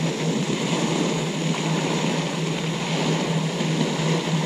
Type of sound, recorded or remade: recorded